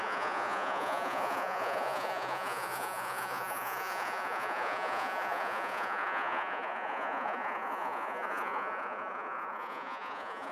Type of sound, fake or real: fake